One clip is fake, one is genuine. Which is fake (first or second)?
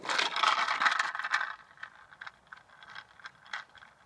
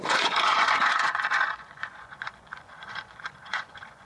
second